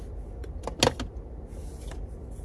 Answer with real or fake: real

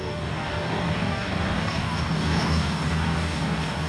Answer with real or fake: fake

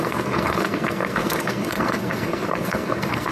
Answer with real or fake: fake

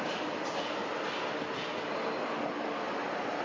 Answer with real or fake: real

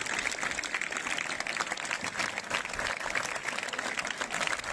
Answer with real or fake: real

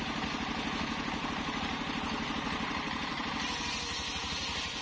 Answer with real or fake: real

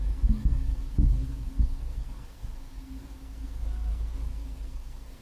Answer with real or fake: fake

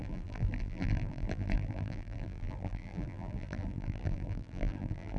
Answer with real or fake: fake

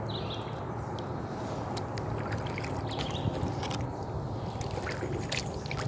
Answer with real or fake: real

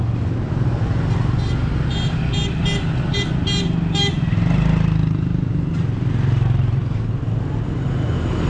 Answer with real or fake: real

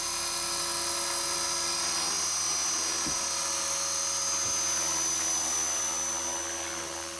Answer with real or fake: real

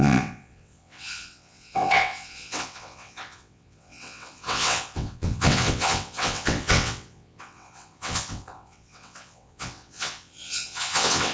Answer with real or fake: fake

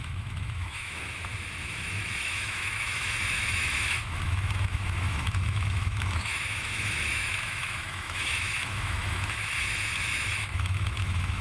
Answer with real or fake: fake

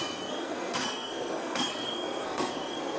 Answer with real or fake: fake